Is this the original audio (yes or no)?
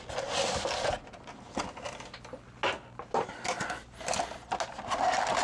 yes